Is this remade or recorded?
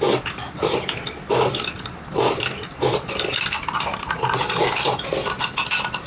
recorded